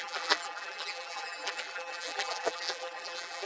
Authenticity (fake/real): fake